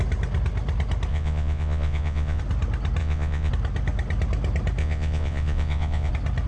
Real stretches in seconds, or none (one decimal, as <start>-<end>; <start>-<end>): 0.0-1.1; 2.4-3.0; 3.5-4.8; 6.1-6.5